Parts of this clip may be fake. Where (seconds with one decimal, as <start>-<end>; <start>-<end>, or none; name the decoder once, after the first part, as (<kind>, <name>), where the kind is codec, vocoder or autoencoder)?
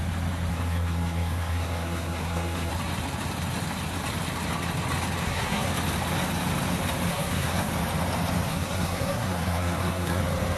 0.5-2.7 (codec, SNAC); 5.2-5.7; 7.1-7.7; 8.5-10.2